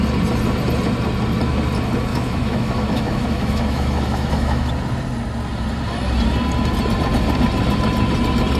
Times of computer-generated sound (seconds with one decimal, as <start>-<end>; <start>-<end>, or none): 2.1-4.7